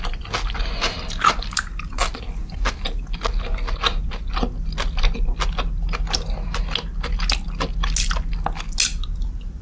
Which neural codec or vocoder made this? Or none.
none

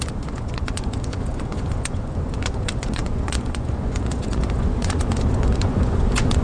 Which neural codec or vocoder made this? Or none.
vocoder, Vocos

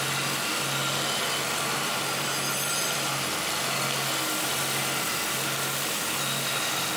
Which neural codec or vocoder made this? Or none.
none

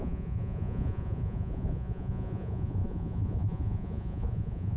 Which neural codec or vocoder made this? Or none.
vocoder, Vocos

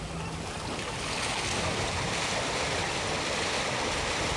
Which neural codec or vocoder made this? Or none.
none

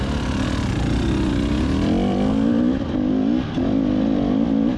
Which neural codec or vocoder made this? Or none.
none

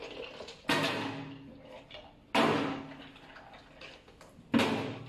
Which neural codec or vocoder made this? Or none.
none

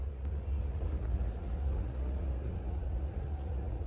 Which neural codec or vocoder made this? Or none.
vocoder, Vocos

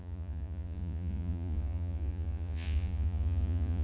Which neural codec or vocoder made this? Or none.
vocoder, Vocos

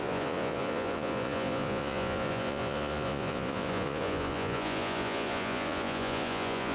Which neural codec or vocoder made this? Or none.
vocoder, Vocos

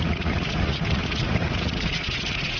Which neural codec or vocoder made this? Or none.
vocoder, Vocos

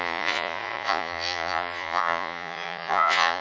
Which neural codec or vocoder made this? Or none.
vocoder, Vocos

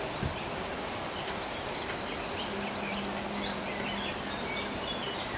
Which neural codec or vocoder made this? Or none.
none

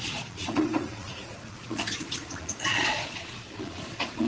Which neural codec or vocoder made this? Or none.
vocoder, Vocos